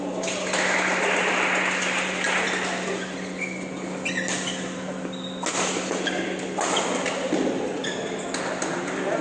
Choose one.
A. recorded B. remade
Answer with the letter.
A